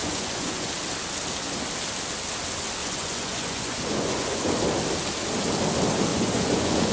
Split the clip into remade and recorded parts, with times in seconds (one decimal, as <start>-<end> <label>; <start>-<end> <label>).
0.0-0.7 remade; 0.7-2.8 recorded; 2.8-4.5 remade; 4.5-6.1 recorded; 6.1-6.9 remade